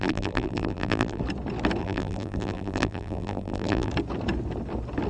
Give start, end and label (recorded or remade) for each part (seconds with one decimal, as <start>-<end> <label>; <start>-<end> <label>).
0.0-1.2 remade; 1.2-1.8 recorded; 1.8-3.9 remade; 3.9-5.1 recorded